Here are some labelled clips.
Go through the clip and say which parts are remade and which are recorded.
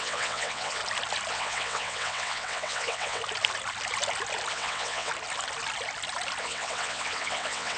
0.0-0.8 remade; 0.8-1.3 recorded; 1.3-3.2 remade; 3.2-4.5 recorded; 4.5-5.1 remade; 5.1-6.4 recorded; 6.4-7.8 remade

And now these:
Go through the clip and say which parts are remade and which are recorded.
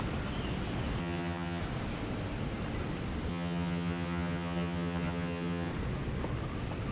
0.0-1.0 recorded; 1.0-1.6 remade; 1.6-3.3 recorded; 3.3-5.7 remade; 5.7-6.9 recorded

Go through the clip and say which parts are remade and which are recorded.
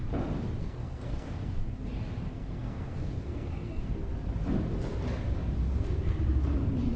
0.0-0.6 recorded; 0.6-1.8 remade; 1.8-2.3 recorded; 2.3-4.1 remade; 4.1-5.7 recorded; 5.7-6.2 remade; 6.2-7.0 recorded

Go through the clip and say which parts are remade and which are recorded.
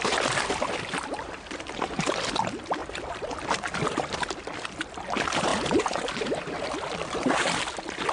0.0-8.1 recorded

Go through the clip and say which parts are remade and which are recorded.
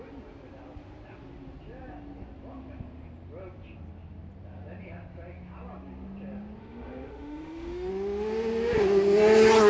0.0-6.6 recorded; 6.6-7.9 remade; 7.9-9.7 recorded